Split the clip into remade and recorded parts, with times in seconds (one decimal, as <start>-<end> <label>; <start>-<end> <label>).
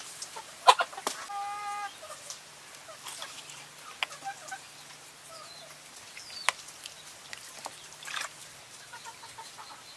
0.0-8.4 recorded; 8.4-9.0 remade; 9.0-10.0 recorded